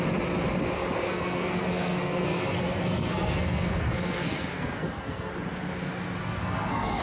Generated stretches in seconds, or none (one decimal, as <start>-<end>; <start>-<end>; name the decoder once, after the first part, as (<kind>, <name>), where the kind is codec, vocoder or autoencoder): 1.1-5.3 (codec, SNAC); 6.2-7.0